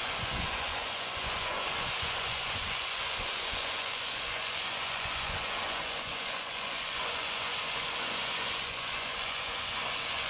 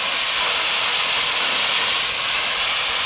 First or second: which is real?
second